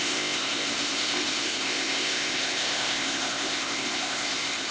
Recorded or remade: remade